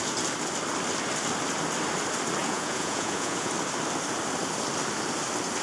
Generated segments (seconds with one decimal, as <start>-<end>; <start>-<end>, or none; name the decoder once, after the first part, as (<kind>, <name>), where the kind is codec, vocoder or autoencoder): 2.4-3.5 (vocoder, Vocos)